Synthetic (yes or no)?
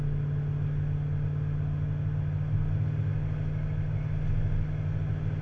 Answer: no